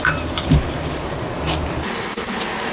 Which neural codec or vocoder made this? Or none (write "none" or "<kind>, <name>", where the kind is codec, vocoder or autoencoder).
none